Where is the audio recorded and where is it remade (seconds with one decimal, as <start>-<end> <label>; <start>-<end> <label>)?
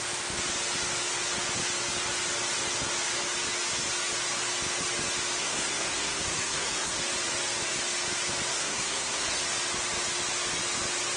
0.0-5.4 recorded; 5.4-7.0 remade; 7.0-8.5 recorded; 8.5-9.4 remade; 9.4-11.2 recorded